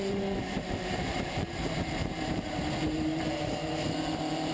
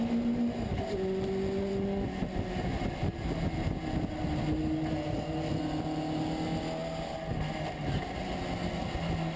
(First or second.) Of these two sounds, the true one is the second